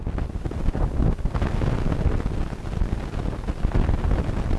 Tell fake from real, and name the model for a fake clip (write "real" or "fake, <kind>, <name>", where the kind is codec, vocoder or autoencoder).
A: real